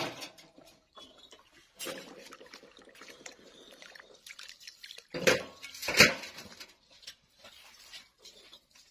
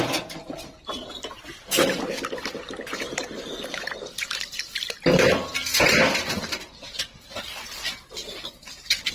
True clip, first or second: second